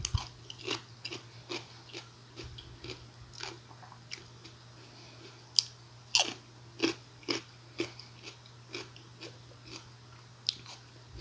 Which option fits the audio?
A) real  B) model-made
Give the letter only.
A